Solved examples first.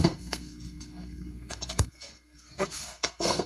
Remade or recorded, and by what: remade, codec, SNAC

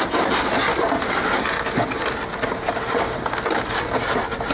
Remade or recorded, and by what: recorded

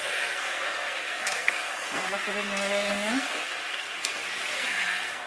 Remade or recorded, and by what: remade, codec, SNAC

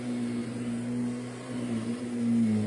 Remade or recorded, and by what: recorded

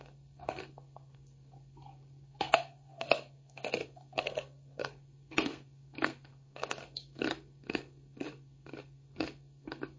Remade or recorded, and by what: remade, codec, SNAC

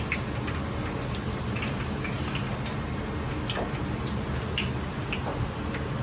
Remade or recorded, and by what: recorded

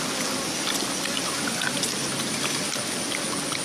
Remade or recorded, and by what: recorded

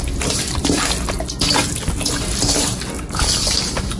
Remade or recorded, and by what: recorded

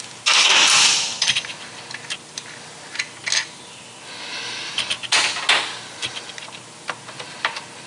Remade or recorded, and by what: recorded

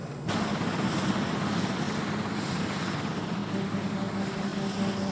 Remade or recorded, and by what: recorded